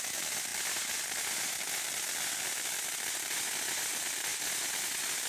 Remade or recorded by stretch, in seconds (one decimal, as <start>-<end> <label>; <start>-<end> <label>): 0.0-5.3 recorded